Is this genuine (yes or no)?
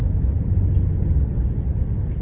yes